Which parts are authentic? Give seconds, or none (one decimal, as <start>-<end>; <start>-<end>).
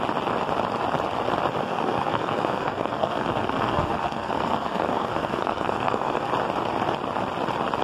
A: 0.0-1.6; 6.3-7.8